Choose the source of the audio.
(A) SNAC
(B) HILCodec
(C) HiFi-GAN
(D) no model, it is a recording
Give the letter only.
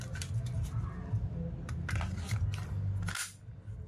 D